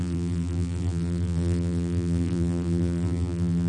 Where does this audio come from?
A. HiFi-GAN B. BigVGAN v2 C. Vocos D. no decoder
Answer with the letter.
B